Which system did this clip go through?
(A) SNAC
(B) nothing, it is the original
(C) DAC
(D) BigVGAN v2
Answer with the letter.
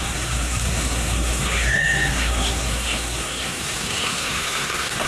A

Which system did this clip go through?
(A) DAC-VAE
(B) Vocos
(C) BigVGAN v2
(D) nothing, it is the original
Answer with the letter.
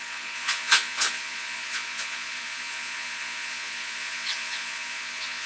B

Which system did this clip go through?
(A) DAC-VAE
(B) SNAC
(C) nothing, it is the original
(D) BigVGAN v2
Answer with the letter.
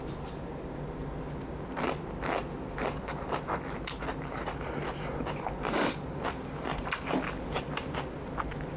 C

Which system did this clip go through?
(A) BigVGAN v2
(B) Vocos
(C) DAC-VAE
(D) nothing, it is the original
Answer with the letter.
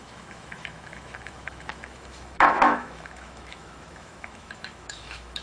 C